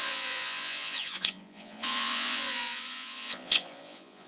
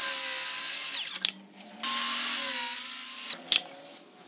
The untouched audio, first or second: second